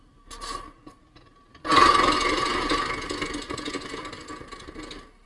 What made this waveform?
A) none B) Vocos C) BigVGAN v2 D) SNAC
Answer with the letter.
A